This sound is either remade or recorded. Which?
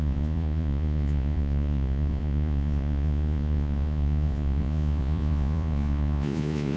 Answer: remade